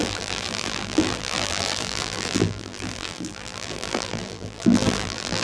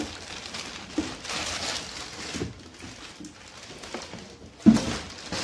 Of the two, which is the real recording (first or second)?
second